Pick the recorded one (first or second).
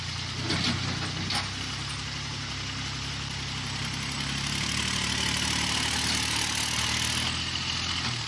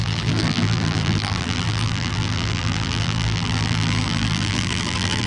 first